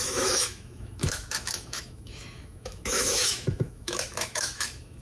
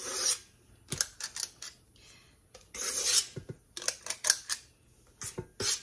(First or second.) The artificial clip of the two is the first